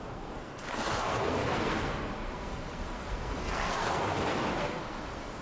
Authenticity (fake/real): fake